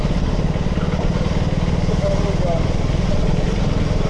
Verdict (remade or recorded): recorded